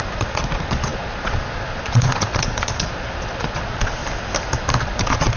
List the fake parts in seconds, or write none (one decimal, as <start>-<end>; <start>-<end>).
0.0-4.0; 4.8-5.4